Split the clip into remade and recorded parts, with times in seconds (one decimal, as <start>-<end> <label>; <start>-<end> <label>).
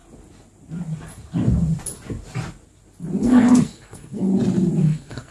0.0-3.2 recorded; 3.2-4.3 remade; 4.3-4.8 recorded; 4.8-5.3 remade